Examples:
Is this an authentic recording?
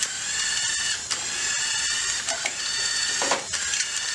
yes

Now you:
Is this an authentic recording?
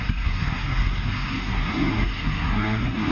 no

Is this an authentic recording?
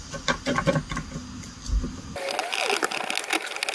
yes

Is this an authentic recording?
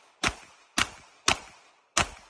yes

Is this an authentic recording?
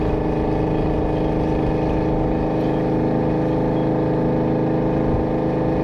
yes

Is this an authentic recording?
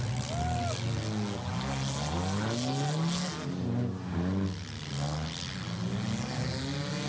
yes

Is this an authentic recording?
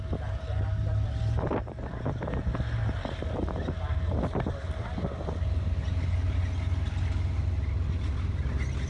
yes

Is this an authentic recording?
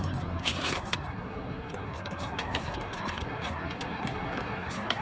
no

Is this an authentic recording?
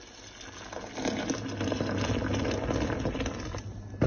yes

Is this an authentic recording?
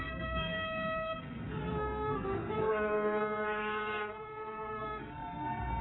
no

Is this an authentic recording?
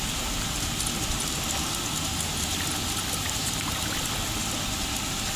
yes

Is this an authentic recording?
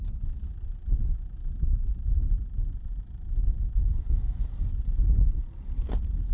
yes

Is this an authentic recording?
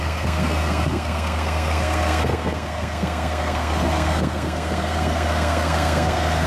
no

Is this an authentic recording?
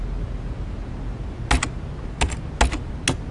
yes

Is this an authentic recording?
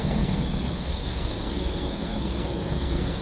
no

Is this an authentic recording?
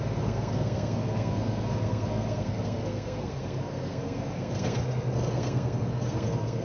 no